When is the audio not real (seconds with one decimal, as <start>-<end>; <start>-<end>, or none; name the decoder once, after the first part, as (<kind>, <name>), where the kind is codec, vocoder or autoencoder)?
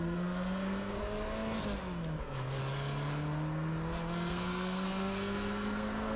0.0-1.0 (codec, SNAC); 2.2-2.6; 4.3-6.2